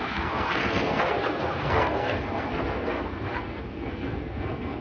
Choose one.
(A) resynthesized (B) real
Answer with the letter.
A